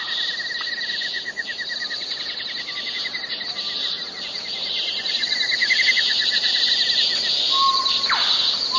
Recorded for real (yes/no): yes